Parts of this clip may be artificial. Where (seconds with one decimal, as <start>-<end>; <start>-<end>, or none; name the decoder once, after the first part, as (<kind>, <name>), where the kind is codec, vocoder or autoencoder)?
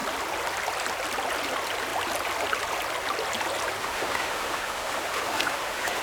3.8-6.0 (autoencoder, DAC-VAE)